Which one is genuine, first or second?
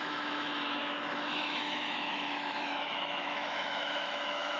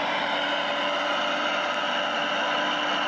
second